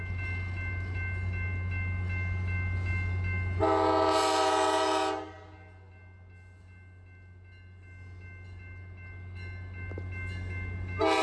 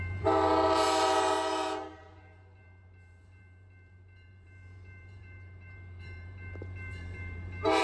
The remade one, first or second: second